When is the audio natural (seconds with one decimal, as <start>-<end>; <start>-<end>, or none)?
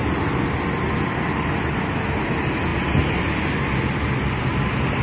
0.0-5.0